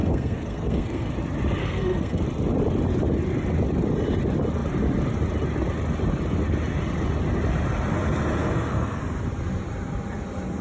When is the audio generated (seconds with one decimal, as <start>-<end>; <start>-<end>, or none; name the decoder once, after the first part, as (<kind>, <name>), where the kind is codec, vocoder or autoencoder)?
0.0-1.1 (codec, SNAC); 1.6-2.2; 8.4-9.0

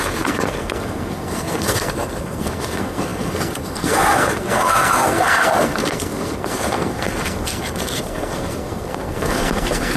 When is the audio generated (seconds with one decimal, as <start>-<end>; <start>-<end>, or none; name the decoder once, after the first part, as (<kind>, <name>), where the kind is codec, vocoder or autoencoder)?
0.0-10.0 (codec, SNAC)